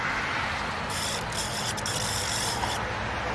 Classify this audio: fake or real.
real